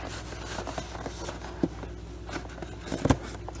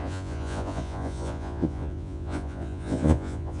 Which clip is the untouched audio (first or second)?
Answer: first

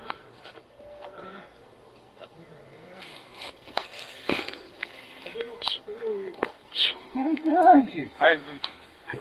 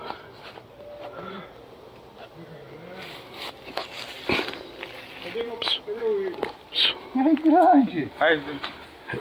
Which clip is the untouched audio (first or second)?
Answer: second